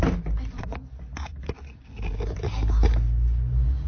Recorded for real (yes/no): yes